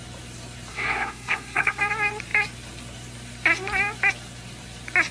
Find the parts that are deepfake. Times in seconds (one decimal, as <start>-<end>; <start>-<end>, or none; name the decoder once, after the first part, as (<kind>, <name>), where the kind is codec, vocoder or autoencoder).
0.7-1.8 (codec, SNAC)